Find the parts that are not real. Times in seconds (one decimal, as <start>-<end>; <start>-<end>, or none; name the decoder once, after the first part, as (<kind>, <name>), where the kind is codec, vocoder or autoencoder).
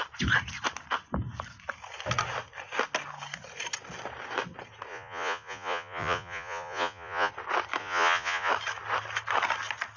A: 4.9-7.3 (vocoder, Vocos); 7.8-8.5